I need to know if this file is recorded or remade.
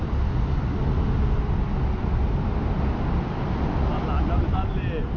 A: recorded